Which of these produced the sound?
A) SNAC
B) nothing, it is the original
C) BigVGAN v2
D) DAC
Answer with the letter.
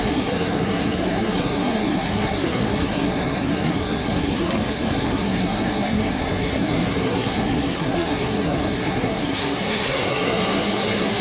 A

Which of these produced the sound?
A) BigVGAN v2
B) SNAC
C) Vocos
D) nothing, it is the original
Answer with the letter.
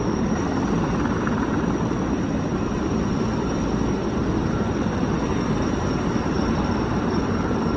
A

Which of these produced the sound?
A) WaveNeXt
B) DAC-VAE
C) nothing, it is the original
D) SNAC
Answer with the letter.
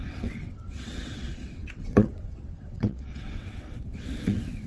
A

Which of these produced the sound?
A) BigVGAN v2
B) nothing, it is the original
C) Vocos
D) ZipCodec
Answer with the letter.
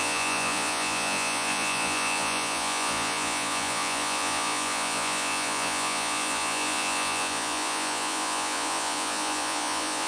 C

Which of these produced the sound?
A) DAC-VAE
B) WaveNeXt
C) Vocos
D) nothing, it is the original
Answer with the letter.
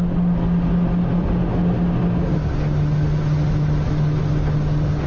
D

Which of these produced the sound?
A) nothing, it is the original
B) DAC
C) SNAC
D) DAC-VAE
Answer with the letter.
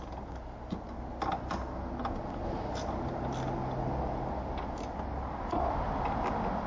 A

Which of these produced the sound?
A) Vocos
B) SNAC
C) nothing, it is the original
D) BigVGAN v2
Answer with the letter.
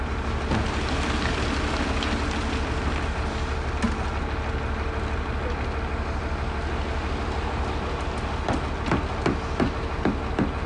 C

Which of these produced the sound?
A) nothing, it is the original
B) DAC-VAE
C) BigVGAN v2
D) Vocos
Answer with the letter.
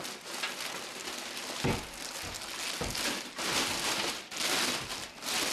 A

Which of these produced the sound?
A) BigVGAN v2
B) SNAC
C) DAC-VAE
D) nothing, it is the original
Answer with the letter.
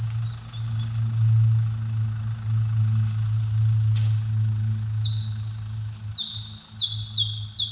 D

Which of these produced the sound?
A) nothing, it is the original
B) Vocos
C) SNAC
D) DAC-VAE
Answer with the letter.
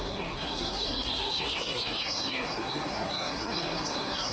C